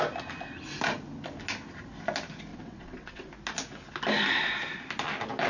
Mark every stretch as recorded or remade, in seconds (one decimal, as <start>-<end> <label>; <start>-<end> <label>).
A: 0.0-2.5 recorded; 2.5-3.3 remade; 3.3-5.5 recorded